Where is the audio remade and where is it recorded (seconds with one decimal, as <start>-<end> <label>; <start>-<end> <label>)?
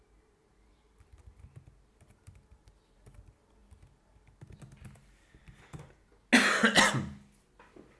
0.0-8.0 recorded